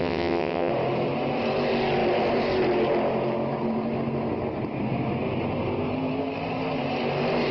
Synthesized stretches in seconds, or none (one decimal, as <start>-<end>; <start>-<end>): 0.0-0.7